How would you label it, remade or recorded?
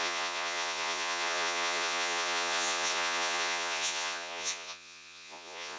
remade